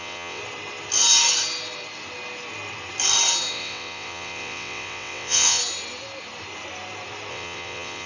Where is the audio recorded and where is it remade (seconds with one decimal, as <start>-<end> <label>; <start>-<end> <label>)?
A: 0.0-0.4 remade; 0.4-3.5 recorded; 3.5-5.6 remade; 5.6-7.3 recorded; 7.3-8.1 remade